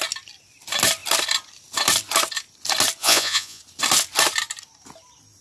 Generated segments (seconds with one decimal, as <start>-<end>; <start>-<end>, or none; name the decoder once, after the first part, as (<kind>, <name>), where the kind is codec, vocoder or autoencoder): 3.0-3.6 (vocoder, Vocos)